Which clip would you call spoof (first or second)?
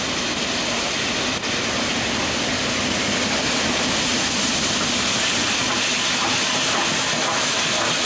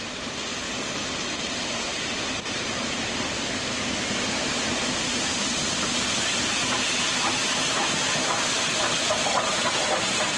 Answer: second